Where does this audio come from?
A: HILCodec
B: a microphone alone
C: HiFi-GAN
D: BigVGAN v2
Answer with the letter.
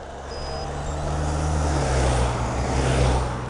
B